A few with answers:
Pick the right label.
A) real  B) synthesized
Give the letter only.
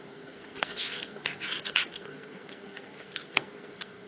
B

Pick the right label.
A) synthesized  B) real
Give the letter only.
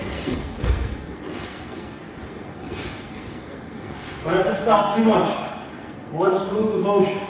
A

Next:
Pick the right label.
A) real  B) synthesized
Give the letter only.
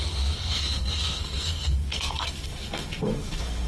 B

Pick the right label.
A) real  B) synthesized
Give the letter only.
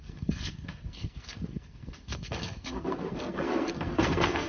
B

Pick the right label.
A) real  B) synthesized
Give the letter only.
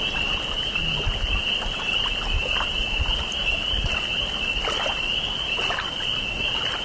A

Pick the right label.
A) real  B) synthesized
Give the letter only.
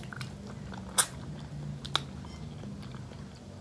A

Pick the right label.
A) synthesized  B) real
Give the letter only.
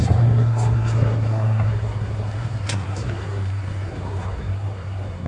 A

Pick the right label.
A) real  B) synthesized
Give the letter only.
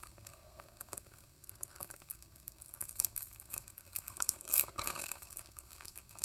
B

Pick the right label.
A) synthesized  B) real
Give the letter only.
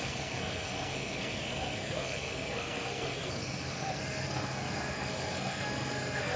A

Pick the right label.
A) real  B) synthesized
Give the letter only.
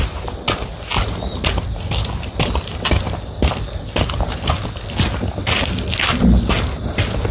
A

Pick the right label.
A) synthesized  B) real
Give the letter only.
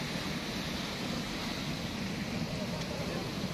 B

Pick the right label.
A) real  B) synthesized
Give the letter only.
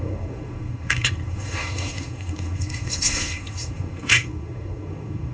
B